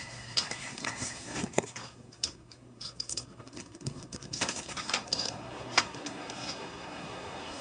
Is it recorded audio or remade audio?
remade